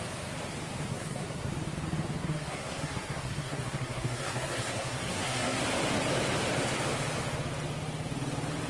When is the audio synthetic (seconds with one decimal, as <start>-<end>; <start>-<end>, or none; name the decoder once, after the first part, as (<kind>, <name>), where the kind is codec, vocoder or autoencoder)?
0.9-1.5 (codec, SNAC); 2.2-5.6